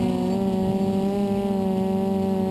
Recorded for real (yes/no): yes